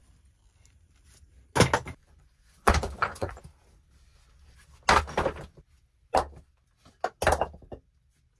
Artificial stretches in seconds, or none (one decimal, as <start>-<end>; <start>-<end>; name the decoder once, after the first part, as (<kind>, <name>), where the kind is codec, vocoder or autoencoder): 2.0-3.4 (vocoder, Vocos)